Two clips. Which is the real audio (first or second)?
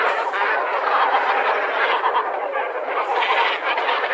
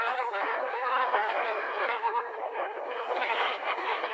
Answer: first